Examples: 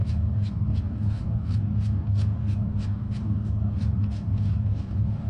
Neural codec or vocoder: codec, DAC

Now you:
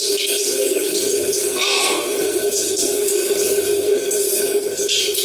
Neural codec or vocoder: codec, SNAC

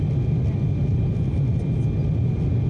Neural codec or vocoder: none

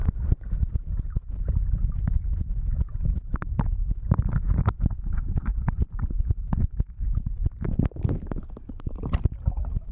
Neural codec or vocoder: none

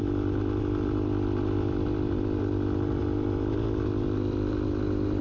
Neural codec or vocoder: none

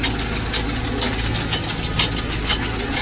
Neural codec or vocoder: none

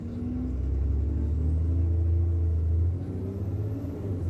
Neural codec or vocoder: none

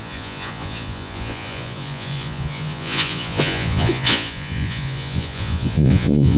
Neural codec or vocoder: vocoder, Vocos